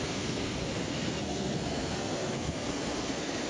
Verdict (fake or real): fake